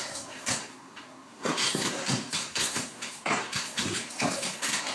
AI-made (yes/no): yes